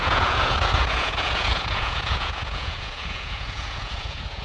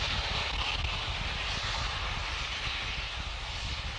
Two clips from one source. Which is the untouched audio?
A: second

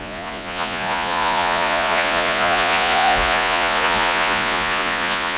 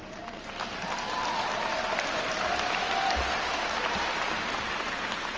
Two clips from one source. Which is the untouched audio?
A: second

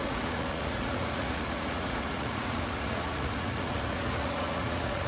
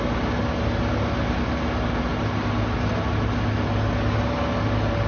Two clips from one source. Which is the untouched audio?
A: second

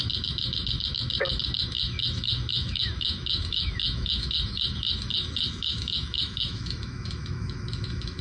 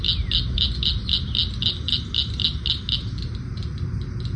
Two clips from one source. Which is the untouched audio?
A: second